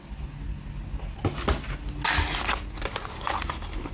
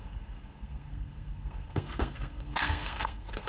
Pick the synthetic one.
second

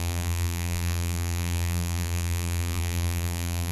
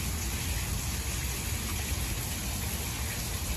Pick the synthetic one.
first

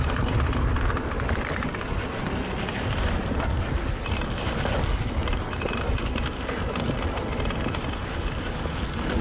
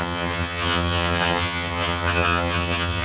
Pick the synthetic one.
second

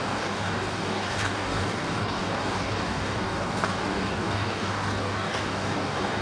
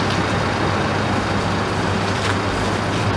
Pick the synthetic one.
first